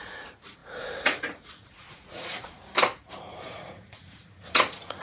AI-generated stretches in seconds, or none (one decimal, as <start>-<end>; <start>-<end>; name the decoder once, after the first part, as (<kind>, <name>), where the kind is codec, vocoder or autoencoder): 0.0-2.6 (vocoder, Vocos); 3.4-5.0